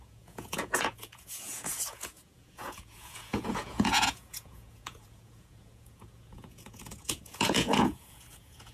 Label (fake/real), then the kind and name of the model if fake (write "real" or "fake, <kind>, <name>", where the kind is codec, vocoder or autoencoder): fake, vocoder, Vocos